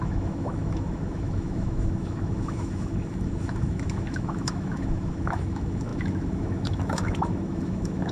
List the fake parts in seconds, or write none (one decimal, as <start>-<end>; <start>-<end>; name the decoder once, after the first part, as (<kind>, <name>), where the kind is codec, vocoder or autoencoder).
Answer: 0.0-8.1 (autoencoder, DAC-VAE)